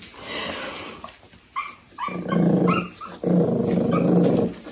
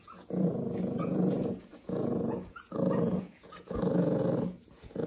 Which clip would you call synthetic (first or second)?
second